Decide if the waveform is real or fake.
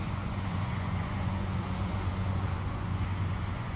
fake